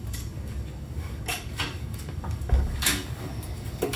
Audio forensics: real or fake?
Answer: fake